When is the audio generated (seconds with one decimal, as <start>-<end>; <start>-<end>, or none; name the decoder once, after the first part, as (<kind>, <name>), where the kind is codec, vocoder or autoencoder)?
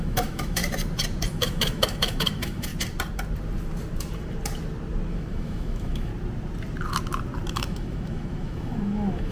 0.0-0.6 (autoencoder, DAC-VAE); 1.3-2.7; 5.1-6.1; 7.5-9.3